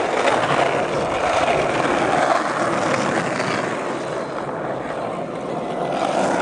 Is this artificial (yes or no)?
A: no